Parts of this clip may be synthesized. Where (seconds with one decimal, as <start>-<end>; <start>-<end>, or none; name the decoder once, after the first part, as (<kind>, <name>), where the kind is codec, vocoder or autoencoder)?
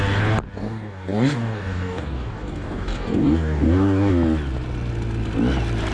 0.6-4.1 (codec, DAC)